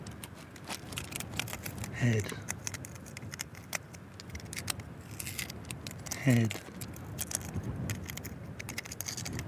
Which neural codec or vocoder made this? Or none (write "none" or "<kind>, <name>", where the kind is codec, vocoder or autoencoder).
none